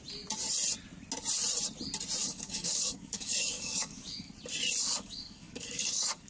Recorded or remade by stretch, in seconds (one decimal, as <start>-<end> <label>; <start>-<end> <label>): 0.0-2.2 recorded; 2.2-4.3 remade; 4.3-4.8 recorded; 4.8-6.3 remade